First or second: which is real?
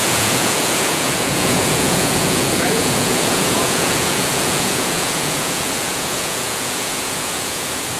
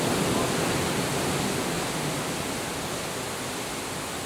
second